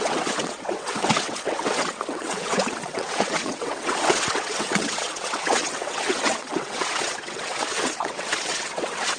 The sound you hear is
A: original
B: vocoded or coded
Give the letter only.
B